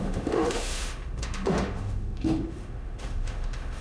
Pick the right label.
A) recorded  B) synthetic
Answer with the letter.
B